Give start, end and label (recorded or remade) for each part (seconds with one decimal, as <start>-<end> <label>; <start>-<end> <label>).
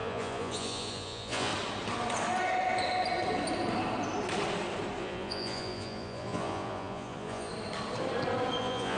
0.0-1.5 remade; 1.5-5.0 recorded; 5.0-7.5 remade; 7.5-8.6 recorded; 8.6-9.0 remade